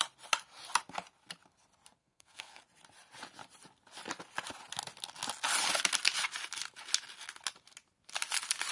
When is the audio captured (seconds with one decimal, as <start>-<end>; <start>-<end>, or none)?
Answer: 0.0-2.0; 2.6-8.7